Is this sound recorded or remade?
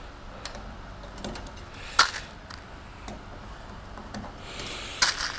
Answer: recorded